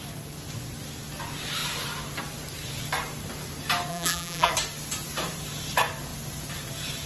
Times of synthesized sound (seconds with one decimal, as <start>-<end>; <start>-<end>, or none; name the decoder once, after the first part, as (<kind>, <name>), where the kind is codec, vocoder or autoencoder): 3.9-4.5 (vocoder, BigVGAN v2)